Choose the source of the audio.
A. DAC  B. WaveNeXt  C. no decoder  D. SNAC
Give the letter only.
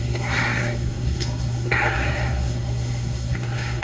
D